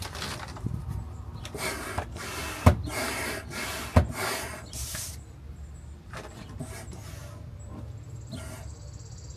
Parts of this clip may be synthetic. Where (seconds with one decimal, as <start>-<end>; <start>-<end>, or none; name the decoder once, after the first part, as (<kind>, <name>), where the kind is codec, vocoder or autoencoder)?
0.0-2.4 (vocoder, BigVGAN v2); 5.5-9.4